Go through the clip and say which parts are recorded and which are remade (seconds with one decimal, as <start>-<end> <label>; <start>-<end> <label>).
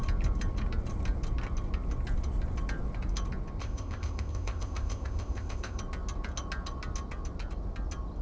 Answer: 0.0-3.6 recorded; 3.6-5.8 remade; 5.8-8.2 recorded